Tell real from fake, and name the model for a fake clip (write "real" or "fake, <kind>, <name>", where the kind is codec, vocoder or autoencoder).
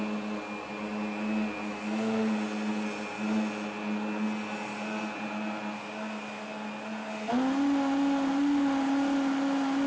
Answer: real